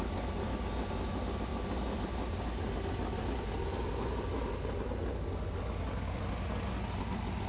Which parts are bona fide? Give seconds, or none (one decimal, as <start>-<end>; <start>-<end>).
0.0-7.5